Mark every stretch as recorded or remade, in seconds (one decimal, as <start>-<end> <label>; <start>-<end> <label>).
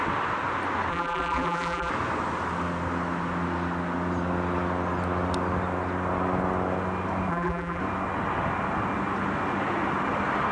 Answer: 0.0-0.9 recorded; 0.9-1.9 remade; 1.9-7.3 recorded; 7.3-7.8 remade; 7.8-10.5 recorded